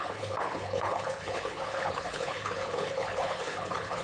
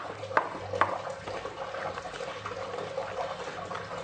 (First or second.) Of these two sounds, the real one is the second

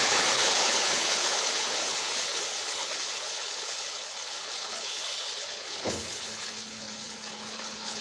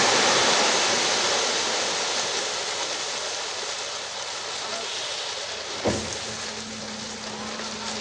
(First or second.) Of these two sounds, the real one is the second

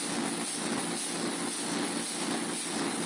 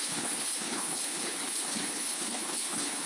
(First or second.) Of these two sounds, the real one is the first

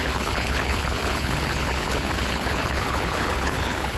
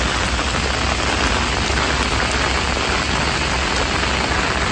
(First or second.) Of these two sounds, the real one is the second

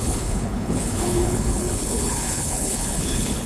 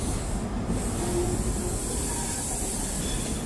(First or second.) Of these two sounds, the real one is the second